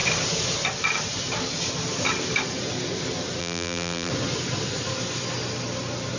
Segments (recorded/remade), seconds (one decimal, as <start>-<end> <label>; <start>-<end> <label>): 0.0-3.4 recorded; 3.4-4.1 remade; 4.1-6.2 recorded